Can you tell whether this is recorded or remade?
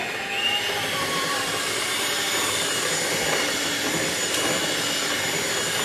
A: recorded